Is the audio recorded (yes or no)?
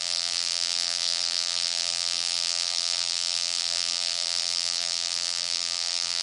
no